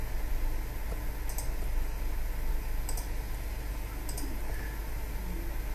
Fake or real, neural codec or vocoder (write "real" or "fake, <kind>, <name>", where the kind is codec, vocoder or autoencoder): real